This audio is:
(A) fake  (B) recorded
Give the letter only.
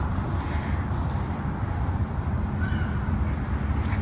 B